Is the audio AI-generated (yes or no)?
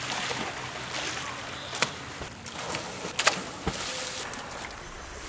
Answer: no